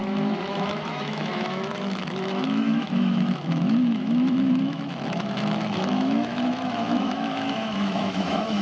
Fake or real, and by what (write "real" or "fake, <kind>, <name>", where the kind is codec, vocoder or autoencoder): fake, autoencoder, DAC-VAE